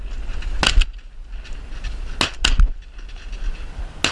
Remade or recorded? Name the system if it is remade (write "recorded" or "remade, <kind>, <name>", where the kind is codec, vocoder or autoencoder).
recorded